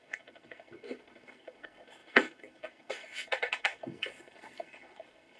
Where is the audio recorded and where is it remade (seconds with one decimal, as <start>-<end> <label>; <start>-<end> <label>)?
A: 0.0-5.4 remade